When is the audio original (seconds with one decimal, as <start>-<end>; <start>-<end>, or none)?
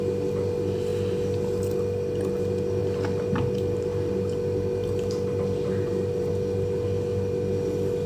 0.0-2.8; 6.3-8.1